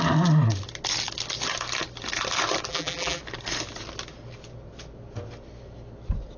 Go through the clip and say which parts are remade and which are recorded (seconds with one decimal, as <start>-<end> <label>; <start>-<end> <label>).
0.0-2.7 recorded; 2.7-3.2 remade; 3.2-6.4 recorded